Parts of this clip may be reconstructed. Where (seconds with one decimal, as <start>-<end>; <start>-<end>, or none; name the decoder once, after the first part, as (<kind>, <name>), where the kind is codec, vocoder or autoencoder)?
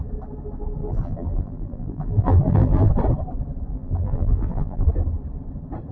0.8-2.9 (vocoder, BigVGAN v2); 3.7-4.9